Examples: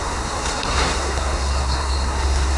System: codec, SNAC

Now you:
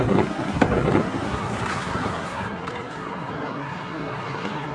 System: codec, SNAC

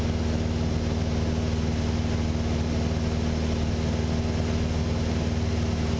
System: none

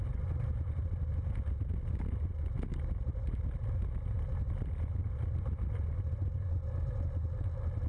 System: none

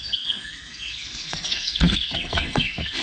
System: codec, SNAC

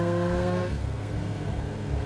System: codec, SNAC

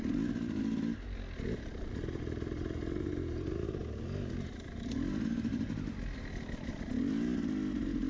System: none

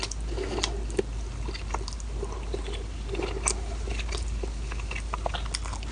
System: none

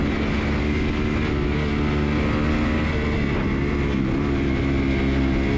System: none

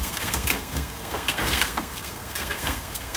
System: codec, SNAC